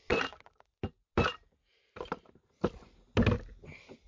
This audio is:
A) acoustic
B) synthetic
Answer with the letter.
A